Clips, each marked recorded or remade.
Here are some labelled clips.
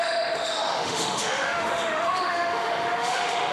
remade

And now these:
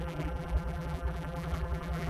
remade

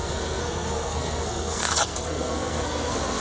remade